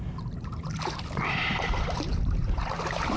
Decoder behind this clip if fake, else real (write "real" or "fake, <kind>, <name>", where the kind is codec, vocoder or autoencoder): fake, vocoder, BigVGAN v2